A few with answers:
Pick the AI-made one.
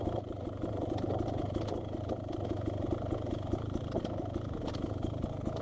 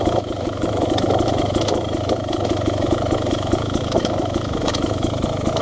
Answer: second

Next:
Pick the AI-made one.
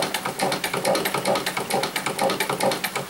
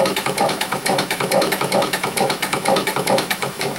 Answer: second